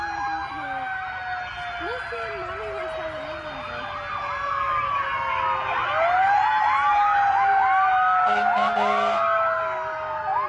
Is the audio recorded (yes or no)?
yes